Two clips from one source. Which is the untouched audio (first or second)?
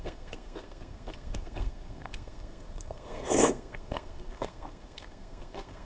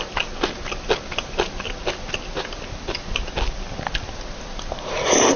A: second